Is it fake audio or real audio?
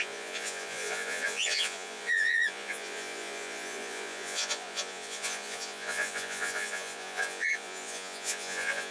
fake